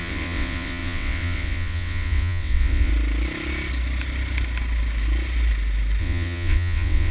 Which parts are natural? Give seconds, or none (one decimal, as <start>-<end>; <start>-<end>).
2.9-6.0